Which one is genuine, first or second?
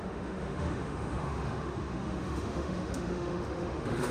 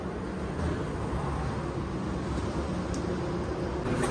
second